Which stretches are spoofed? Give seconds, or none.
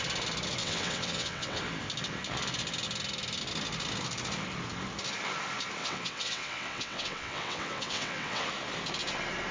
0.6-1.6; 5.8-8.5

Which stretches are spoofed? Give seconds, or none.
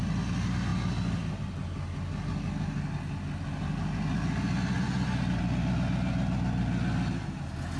none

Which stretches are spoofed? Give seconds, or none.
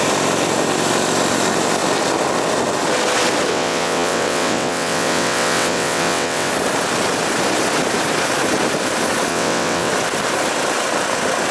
3.5-6.5; 9.3-9.9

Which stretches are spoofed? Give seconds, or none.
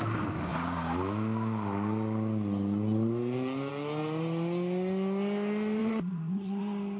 5.8-6.6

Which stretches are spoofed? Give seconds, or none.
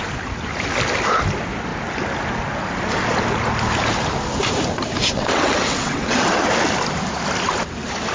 5.0-6.4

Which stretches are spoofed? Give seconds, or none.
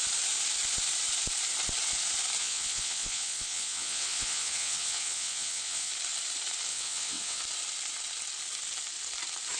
2.4-5.9; 6.7-7.4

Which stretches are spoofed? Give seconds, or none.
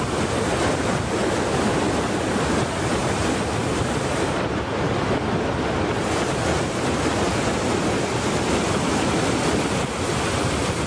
none